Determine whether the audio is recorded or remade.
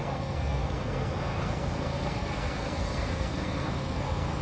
remade